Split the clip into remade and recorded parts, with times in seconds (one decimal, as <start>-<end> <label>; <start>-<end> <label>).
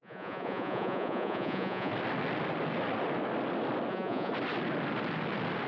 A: 0.0-1.9 remade; 1.9-3.9 recorded; 3.9-4.3 remade; 4.3-5.7 recorded